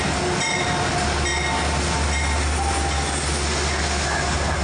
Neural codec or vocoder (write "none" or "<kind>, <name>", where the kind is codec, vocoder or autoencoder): none